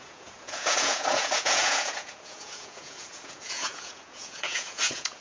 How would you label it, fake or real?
fake